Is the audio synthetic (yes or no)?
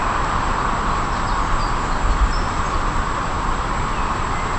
no